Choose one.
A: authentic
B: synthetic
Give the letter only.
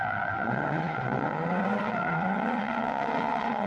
B